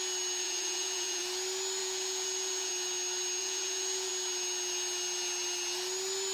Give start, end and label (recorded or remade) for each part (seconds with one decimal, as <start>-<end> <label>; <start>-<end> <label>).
0.0-0.4 recorded; 0.4-1.2 remade; 1.2-1.8 recorded; 1.8-2.7 remade; 2.7-3.4 recorded; 3.4-4.1 remade; 4.1-6.3 recorded